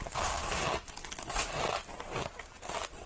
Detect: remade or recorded recorded